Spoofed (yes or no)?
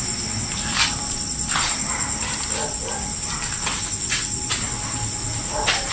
no